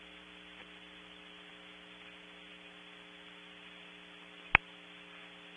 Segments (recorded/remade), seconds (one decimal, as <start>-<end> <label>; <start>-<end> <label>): 0.0-0.6 recorded; 0.6-1.5 remade; 1.5-5.6 recorded